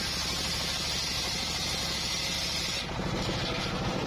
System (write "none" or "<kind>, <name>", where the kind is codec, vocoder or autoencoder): none